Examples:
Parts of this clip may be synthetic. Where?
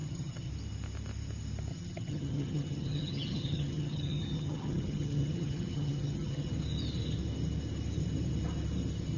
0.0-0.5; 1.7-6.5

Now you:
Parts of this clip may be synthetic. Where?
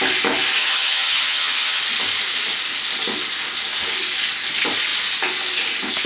0.6-1.8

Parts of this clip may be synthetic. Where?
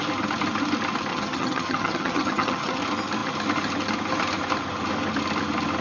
1.1-2.8